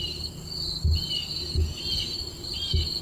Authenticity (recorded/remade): recorded